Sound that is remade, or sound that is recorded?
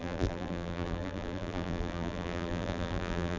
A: remade